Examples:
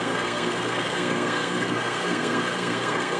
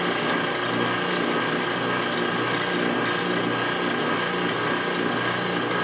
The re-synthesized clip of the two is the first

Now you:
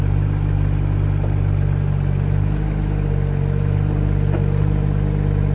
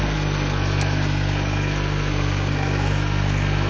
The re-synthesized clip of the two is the second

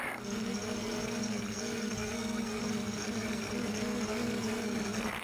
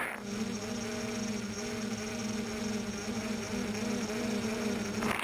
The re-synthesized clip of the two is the first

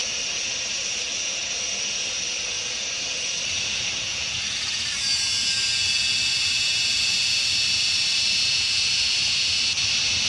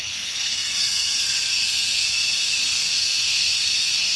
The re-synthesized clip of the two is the second